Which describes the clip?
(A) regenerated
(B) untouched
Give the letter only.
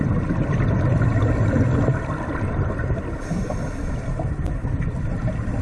B